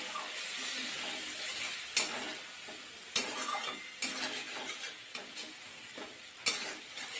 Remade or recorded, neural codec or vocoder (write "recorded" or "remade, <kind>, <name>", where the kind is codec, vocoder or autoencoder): recorded